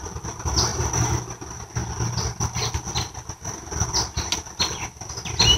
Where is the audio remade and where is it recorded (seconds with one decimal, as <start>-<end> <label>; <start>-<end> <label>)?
0.0-5.6 recorded